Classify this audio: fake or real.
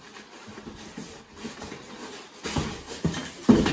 real